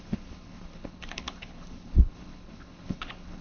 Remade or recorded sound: remade